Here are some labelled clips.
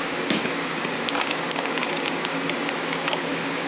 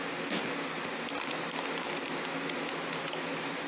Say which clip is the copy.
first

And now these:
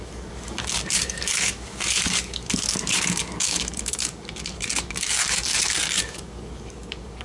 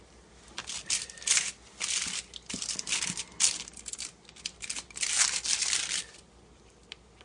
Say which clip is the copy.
first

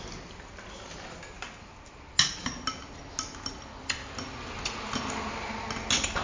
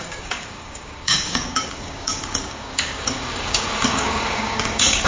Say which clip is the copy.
second